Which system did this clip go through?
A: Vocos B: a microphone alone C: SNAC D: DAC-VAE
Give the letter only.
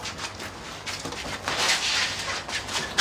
B